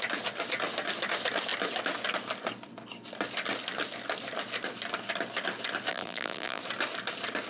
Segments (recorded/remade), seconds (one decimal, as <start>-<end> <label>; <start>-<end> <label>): 0.0-5.9 recorded; 5.9-6.6 remade; 6.6-7.5 recorded